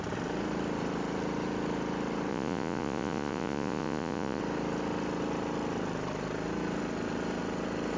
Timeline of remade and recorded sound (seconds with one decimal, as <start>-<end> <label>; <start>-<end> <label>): 0.0-2.3 recorded; 2.3-4.4 remade; 4.4-8.0 recorded